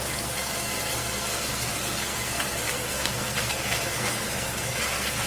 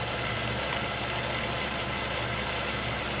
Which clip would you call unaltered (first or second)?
second